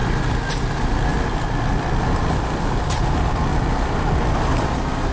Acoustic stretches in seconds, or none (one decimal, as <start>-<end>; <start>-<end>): 0.0-0.5; 1.1-2.1; 3.5-5.1